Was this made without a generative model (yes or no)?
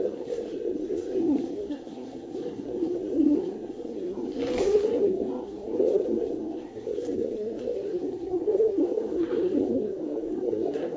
no